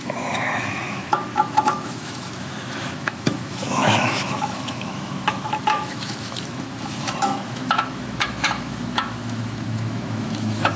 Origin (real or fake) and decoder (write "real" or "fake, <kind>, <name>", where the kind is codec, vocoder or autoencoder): fake, autoencoder, DAC-VAE